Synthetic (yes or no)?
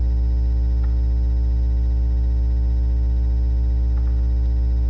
no